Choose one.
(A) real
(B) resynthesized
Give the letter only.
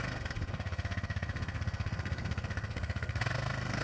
B